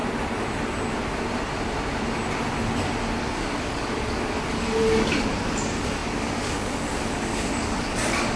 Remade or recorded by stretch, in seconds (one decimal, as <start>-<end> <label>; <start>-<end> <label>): 0.0-3.2 recorded; 3.2-8.4 remade